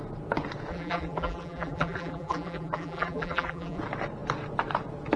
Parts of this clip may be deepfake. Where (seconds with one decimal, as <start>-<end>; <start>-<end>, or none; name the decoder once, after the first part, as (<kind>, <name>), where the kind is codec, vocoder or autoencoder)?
0.7-3.8 (vocoder, BigVGAN v2)